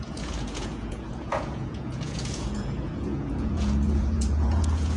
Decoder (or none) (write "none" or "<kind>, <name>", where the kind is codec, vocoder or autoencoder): vocoder, Vocos